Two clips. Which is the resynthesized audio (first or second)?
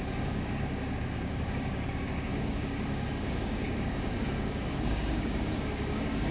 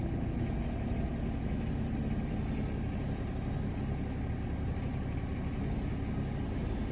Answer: first